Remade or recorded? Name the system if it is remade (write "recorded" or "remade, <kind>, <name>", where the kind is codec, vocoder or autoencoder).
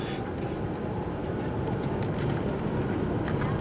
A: recorded